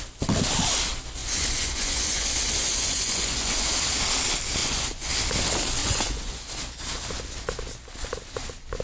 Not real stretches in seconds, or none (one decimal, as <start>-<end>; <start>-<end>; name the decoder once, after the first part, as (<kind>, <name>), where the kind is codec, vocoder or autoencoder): 1.2-3.7 (vocoder, Vocos); 4.6-5.1; 5.8-6.5

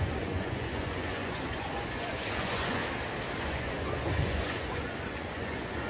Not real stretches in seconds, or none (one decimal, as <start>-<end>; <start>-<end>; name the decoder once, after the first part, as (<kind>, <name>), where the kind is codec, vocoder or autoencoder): 0.0-2.8 (vocoder, Vocos); 3.4-5.9

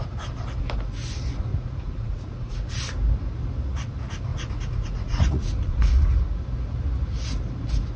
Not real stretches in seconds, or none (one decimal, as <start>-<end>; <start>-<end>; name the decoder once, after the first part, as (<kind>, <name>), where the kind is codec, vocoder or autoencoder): 1.5-2.8 (vocoder, Vocos); 4.3-6.2

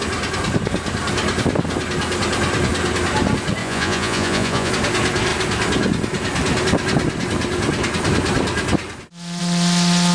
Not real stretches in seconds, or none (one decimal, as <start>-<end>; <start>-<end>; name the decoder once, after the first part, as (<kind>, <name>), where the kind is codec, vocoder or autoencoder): 3.6-4.7 (vocoder, Vocos)

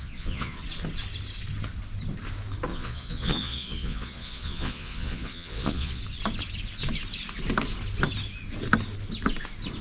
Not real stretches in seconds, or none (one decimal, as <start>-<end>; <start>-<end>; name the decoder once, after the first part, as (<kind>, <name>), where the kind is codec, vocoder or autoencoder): 0.0-0.6 (vocoder, Vocos); 2.7-6.0

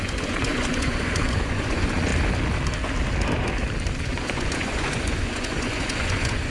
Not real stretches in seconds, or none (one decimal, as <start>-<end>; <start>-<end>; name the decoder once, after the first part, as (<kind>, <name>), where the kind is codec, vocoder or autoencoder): 0.0-2.1 (vocoder, Vocos); 4.0-6.5

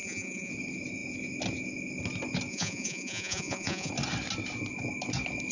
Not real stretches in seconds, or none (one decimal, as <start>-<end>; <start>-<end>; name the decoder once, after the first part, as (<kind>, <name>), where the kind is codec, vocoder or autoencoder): 0.0-0.5 (vocoder, Vocos); 2.5-3.9

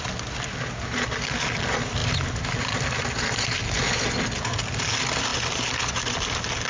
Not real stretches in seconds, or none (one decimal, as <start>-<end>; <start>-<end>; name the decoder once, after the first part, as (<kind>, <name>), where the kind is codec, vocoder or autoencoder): none